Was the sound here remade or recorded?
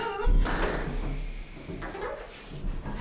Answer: recorded